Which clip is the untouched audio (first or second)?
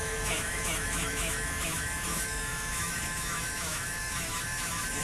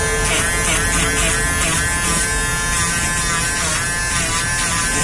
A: second